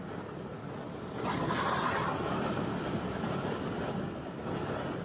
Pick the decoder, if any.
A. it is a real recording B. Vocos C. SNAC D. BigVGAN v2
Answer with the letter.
A